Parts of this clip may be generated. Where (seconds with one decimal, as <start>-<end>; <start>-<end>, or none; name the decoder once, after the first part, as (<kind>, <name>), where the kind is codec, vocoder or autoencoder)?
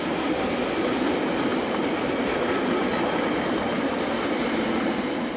1.5-4.6 (vocoder, BigVGAN v2)